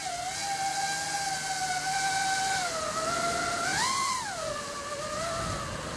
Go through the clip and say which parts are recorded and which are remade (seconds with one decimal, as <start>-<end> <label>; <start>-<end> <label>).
0.0-6.0 recorded